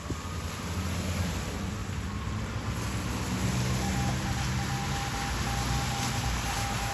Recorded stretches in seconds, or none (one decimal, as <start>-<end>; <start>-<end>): 0.0-6.9